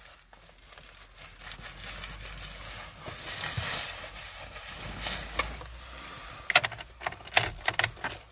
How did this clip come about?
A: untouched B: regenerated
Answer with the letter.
A